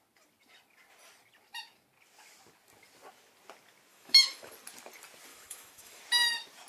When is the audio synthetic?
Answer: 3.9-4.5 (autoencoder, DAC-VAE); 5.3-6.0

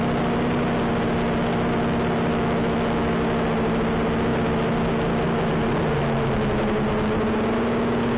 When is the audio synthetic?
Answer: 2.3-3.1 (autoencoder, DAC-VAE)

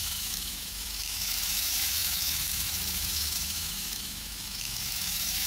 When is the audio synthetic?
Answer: 0.0-5.5 (autoencoder, DAC-VAE)

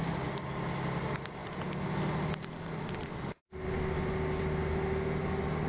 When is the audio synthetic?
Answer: none

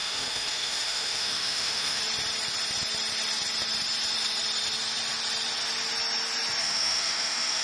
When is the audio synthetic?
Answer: 0.0-2.0 (autoencoder, DAC-VAE); 6.6-7.6

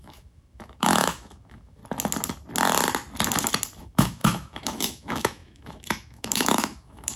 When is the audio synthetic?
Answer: 0.0-1.8 (autoencoder, DAC-VAE); 3.8-7.2